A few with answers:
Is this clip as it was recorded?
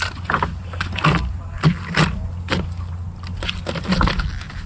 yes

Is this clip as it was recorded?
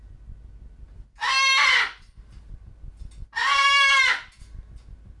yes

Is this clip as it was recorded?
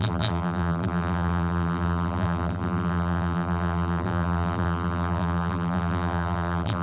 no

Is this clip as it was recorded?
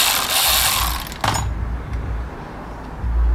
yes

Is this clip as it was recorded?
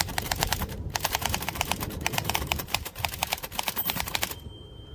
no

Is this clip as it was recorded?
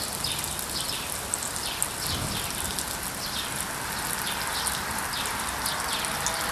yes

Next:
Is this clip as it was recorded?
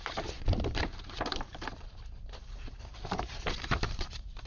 no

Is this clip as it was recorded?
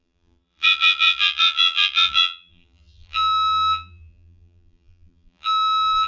no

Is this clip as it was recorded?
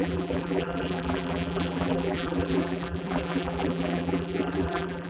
no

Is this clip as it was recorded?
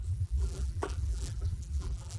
no